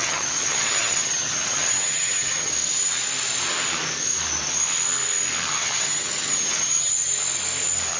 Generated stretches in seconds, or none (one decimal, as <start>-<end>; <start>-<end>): 0.0-2.5; 5.5-6.9